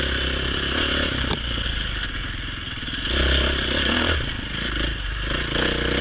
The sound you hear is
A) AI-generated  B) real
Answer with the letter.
B